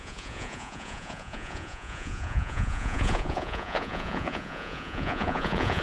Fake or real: fake